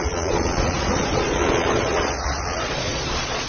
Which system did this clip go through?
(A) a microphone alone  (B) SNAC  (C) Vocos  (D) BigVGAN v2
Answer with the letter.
C